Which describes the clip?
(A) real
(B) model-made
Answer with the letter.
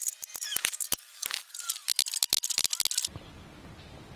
A